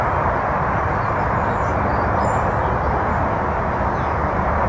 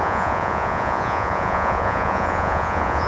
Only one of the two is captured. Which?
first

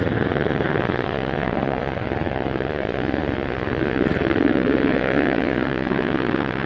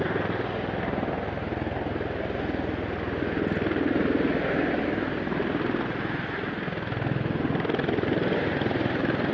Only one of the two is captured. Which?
second